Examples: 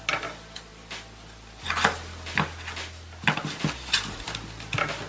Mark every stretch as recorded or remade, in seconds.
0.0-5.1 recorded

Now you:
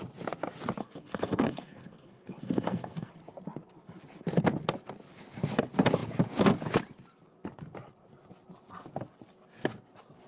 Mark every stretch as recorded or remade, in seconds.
0.0-0.8 recorded; 0.8-3.1 remade; 3.1-10.3 recorded

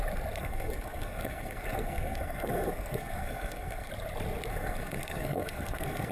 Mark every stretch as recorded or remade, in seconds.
0.0-0.4 recorded; 0.4-3.9 remade; 3.9-4.5 recorded; 4.5-6.1 remade

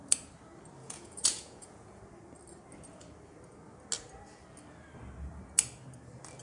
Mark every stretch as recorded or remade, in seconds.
0.0-0.8 recorded; 0.8-2.0 remade; 2.0-6.4 recorded